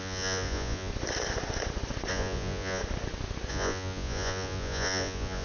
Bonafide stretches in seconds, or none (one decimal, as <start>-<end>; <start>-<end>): 0.9-2.1; 2.8-3.5